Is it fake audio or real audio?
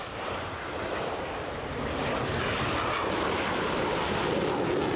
real